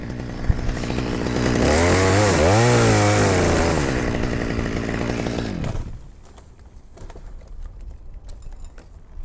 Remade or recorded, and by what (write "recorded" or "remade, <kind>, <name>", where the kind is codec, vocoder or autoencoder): recorded